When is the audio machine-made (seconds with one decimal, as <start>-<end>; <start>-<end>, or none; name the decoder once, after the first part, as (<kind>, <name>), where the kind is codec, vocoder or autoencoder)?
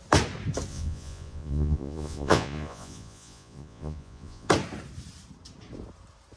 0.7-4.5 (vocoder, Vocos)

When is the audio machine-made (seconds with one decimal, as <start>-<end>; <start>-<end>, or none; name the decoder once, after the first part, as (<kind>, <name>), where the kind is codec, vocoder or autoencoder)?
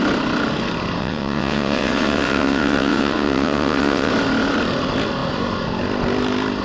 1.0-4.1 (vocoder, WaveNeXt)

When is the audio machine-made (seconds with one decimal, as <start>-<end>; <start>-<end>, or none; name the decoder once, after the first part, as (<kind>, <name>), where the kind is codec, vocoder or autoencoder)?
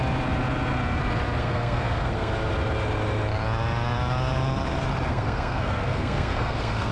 1.4-2.3 (codec, SNAC); 5.1-6.9